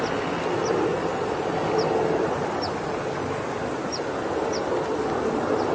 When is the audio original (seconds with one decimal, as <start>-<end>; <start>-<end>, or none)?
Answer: 0.0-5.7